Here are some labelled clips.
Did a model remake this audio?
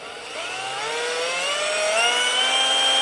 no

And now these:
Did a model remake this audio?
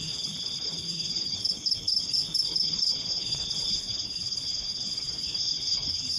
yes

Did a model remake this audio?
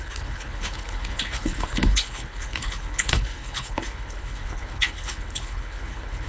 yes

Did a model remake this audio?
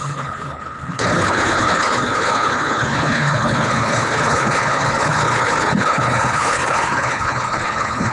yes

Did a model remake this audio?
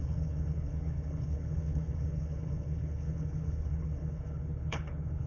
yes